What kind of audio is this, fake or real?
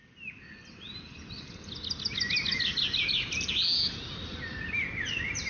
real